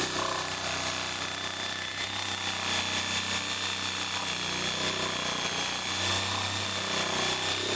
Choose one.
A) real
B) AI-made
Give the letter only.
A